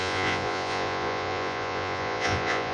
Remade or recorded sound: remade